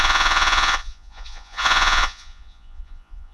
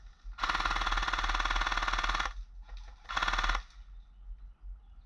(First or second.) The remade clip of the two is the first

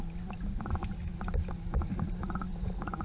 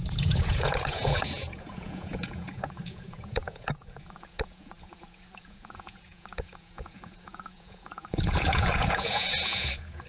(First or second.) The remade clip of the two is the second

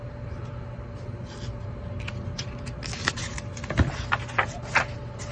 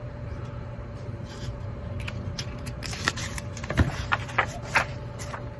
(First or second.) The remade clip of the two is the second